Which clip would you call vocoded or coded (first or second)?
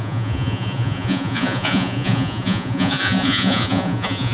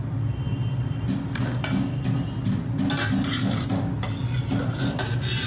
first